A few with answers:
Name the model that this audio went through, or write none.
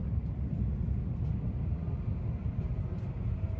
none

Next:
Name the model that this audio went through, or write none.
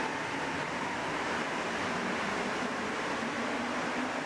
none